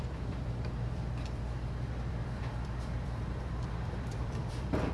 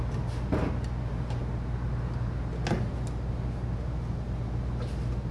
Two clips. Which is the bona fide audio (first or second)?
second